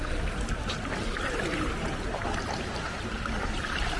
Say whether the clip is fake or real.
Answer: real